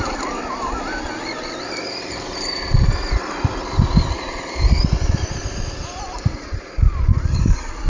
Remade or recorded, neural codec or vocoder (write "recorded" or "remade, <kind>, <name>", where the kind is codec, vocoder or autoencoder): remade, vocoder, BigVGAN v2